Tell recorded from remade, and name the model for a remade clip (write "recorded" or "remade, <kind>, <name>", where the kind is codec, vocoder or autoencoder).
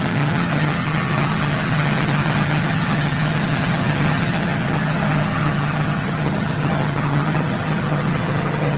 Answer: remade, vocoder, HiFi-GAN